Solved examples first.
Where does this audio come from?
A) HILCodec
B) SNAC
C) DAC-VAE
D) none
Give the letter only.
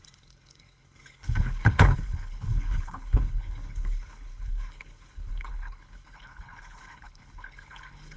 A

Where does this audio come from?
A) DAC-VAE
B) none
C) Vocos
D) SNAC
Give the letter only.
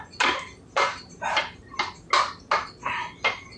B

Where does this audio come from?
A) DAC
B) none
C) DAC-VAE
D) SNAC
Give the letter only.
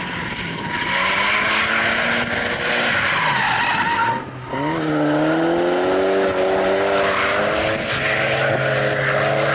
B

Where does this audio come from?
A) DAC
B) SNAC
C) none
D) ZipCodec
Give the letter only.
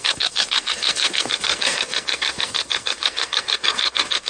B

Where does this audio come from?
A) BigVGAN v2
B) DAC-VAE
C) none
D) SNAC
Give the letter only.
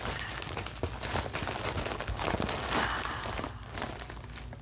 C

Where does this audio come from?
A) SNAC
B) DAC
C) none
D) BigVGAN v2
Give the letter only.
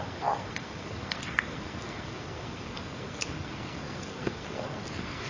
A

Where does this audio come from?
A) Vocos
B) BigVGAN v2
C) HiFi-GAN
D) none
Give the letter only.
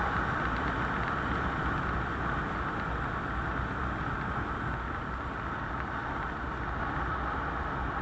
D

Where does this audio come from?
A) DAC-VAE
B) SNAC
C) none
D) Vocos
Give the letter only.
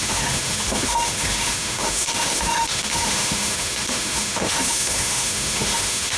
A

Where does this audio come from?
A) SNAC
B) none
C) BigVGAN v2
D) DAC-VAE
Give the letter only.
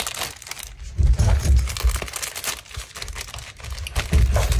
B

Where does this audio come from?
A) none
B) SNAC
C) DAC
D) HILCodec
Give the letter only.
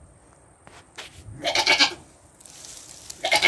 A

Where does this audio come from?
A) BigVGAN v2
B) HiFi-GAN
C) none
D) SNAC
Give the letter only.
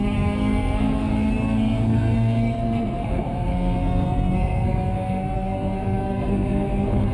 D